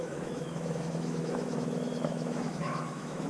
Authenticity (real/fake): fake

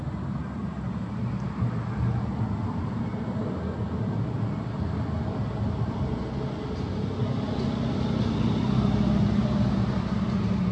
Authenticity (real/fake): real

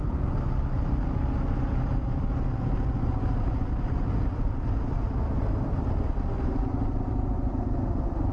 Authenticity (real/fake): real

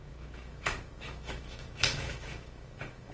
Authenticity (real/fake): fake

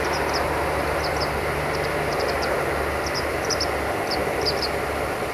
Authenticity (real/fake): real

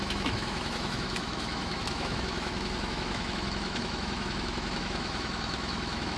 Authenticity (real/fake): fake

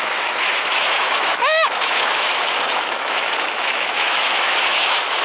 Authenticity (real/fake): fake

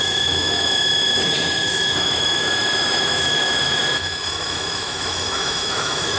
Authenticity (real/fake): fake